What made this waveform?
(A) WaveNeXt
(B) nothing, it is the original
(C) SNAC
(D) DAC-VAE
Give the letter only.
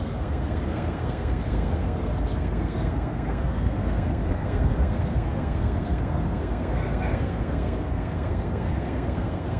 C